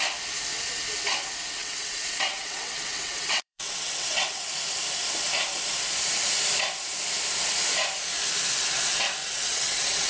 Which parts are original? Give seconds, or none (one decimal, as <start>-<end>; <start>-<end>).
0.0-1.6; 4.5-9.2